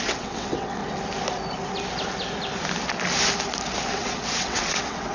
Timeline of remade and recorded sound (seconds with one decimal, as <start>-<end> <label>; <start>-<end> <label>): 0.0-0.8 remade; 0.8-3.9 recorded; 3.9-5.1 remade

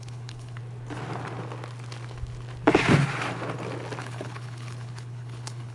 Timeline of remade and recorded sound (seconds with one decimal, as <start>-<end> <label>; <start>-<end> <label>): 0.0-0.6 remade; 0.6-4.0 recorded; 4.0-5.7 remade

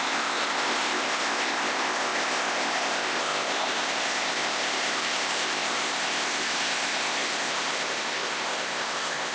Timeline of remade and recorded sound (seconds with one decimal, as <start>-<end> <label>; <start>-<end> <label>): 0.0-9.3 remade

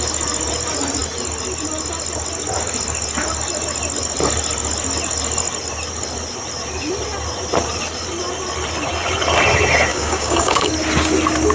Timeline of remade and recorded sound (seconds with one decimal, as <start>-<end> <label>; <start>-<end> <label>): 0.0-9.9 recorded; 9.9-10.7 remade; 10.7-11.5 recorded